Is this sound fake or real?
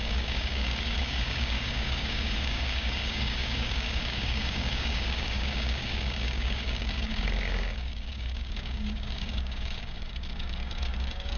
fake